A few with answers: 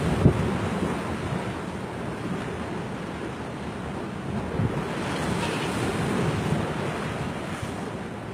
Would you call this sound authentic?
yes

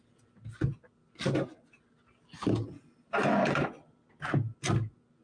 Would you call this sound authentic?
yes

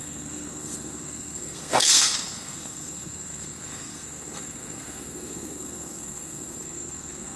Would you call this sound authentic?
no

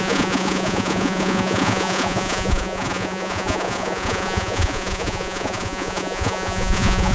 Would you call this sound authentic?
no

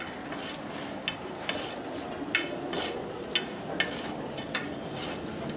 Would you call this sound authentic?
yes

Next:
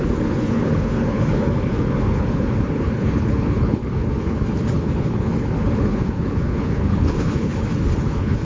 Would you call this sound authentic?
no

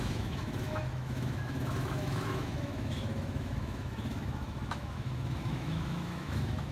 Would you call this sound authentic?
no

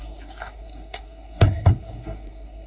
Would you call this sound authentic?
no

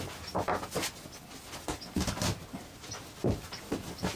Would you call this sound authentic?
yes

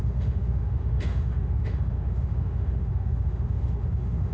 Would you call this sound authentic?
no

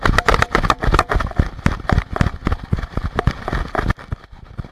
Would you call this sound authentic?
yes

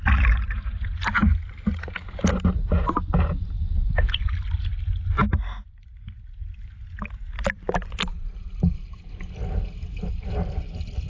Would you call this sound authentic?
yes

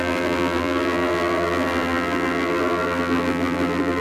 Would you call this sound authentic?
no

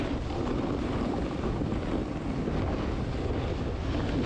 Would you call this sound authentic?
yes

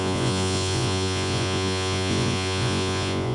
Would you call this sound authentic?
no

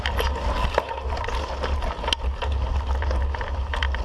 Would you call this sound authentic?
yes